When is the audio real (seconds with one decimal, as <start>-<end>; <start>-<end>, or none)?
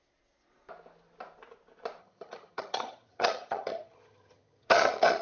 0.0-2.0